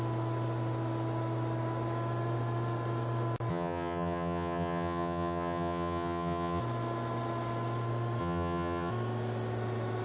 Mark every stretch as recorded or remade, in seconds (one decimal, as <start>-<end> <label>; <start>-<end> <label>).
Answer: 0.0-3.5 recorded; 3.5-6.6 remade; 6.6-8.2 recorded; 8.2-8.9 remade; 8.9-10.0 recorded